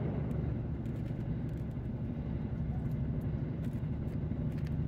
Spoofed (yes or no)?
yes